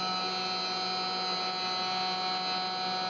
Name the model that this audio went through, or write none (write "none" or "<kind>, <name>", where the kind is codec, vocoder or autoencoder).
none